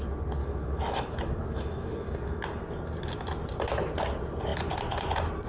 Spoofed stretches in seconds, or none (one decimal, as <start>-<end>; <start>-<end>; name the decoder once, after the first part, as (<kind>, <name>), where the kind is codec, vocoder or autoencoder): 0.4-2.4 (autoencoder, DAC-VAE)